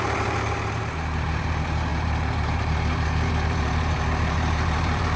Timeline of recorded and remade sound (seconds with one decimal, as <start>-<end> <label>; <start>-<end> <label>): 0.0-5.2 remade